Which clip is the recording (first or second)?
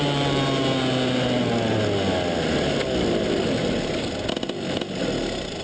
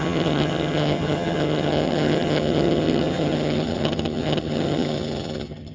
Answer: first